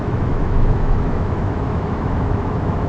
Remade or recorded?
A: remade